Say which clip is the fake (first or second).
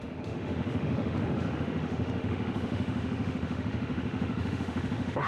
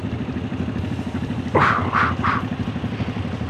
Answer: first